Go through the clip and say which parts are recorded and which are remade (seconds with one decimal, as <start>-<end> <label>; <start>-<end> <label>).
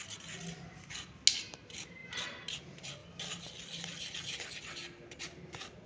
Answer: 0.0-5.9 recorded